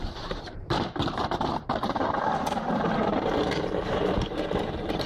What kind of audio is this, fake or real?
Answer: fake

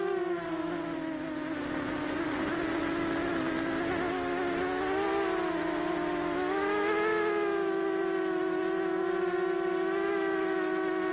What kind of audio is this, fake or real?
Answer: real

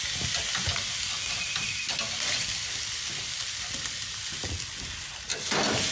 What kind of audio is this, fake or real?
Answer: real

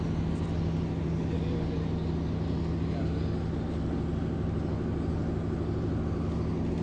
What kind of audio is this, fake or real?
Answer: real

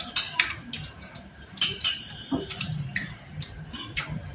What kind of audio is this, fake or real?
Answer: fake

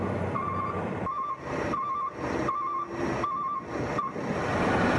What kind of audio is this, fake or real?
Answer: real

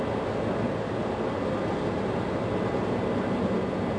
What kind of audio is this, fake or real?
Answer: real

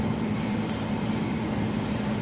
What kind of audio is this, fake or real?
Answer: fake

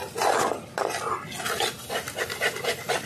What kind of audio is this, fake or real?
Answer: real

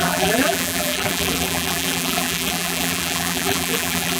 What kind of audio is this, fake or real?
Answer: fake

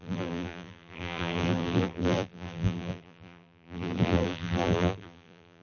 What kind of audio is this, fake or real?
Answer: fake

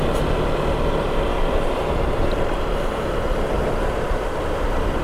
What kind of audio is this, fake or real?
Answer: fake